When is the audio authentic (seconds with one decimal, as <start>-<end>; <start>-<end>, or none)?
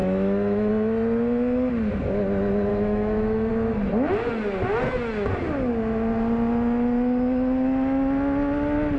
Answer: 0.7-2.7; 3.5-9.0